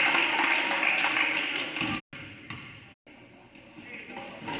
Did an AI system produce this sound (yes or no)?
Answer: no